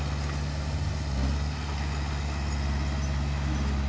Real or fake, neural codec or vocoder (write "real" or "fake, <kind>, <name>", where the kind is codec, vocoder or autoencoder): real